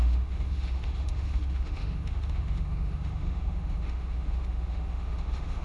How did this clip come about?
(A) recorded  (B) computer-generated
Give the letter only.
B